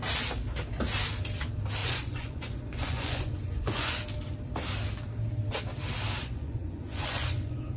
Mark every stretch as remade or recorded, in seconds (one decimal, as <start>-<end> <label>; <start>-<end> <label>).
0.0-1.8 recorded; 1.8-4.0 remade; 4.0-6.2 recorded; 6.2-7.8 remade